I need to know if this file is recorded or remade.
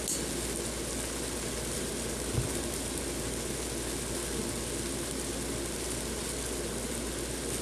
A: recorded